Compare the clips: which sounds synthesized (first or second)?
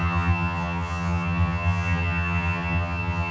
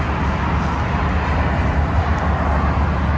first